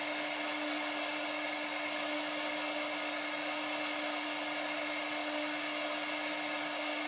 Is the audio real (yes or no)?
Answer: yes